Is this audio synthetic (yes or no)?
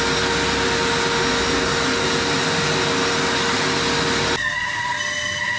no